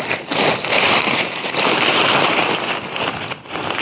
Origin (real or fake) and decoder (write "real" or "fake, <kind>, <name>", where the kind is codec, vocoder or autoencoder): fake, vocoder, BigVGAN v2